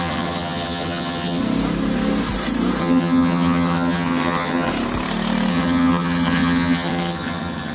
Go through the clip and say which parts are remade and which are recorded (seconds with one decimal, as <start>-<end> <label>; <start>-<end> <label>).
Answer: 0.0-1.4 remade; 1.4-2.8 recorded; 2.8-4.7 remade; 4.7-5.5 recorded; 5.5-7.7 remade